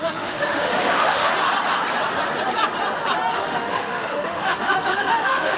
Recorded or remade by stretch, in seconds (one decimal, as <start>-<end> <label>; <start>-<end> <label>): 0.0-1.3 remade; 1.3-3.3 recorded; 3.3-5.6 remade